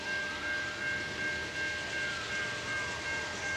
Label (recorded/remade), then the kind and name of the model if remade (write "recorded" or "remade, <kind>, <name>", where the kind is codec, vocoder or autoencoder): recorded